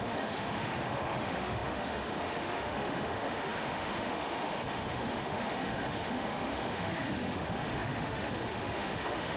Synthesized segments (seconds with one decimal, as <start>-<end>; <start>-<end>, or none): 0.0-9.4